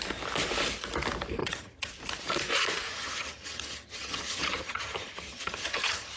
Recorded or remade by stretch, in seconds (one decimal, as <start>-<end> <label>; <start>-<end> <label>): 0.0-1.4 recorded; 1.4-1.9 remade; 1.9-2.9 recorded; 2.9-6.2 remade